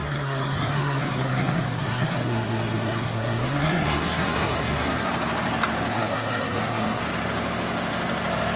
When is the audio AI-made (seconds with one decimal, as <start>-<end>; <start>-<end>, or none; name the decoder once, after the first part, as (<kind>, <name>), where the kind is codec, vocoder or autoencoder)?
0.0-5.1 (codec, SNAC); 5.9-7.0